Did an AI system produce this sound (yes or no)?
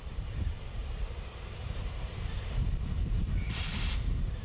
yes